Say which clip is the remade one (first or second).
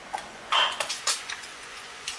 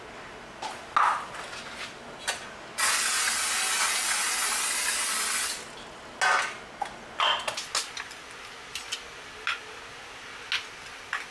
first